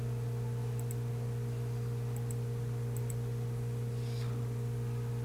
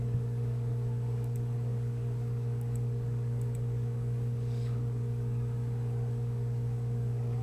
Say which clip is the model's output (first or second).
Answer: second